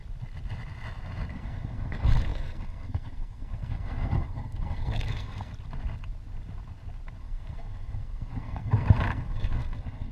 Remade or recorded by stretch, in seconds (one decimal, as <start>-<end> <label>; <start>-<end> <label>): 0.0-1.3 recorded; 1.3-5.5 remade; 5.5-7.2 recorded; 7.2-10.1 remade

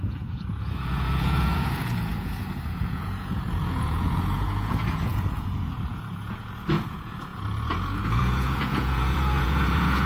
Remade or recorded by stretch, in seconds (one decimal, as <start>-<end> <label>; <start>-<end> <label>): 0.0-10.1 remade

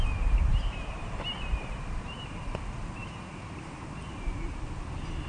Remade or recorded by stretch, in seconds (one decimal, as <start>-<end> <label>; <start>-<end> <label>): 0.0-0.5 recorded; 0.5-2.4 remade; 2.4-3.0 recorded; 3.0-4.6 remade; 4.6-5.3 recorded

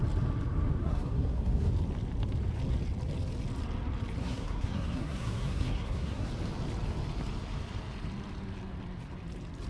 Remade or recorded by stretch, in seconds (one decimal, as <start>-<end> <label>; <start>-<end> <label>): 0.0-0.8 recorded; 0.8-1.7 remade; 1.7-4.2 recorded; 4.2-6.3 remade; 6.3-9.7 recorded

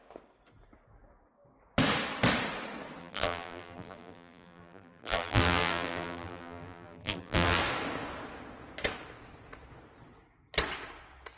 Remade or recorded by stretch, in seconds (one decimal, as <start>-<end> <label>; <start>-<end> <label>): 0.0-3.0 recorded; 3.0-7.6 remade; 7.6-11.4 recorded

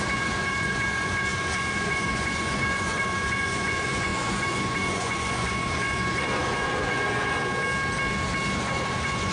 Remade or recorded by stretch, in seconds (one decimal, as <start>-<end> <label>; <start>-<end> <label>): 0.0-7.4 remade; 7.4-8.6 recorded; 8.6-9.3 remade

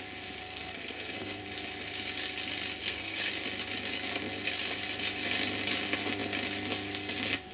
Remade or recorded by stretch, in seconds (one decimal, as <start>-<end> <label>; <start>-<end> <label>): 0.0-0.4 recorded; 0.4-1.4 remade; 1.4-2.8 recorded; 2.8-3.3 remade; 3.3-7.5 recorded